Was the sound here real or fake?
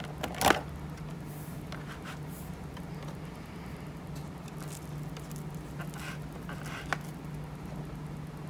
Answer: real